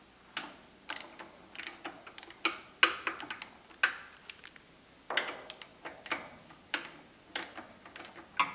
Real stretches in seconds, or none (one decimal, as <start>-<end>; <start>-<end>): 0.0-8.5